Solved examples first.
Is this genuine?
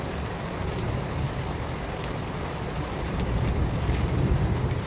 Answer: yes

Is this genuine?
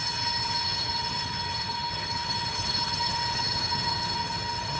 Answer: no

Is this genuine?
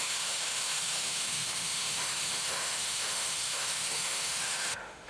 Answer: no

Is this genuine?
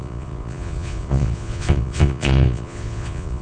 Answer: no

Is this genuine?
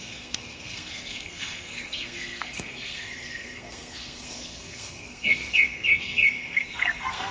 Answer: no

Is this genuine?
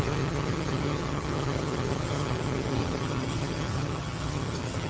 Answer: no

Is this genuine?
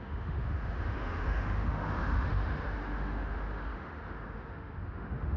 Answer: no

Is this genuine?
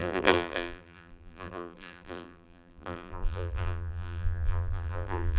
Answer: no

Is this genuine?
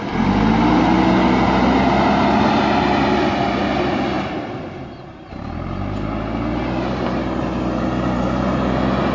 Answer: yes